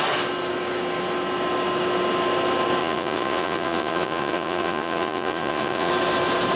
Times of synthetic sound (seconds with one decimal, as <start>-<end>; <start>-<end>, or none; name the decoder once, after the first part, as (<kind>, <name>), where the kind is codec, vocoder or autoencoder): 2.8-5.9 (vocoder, Vocos)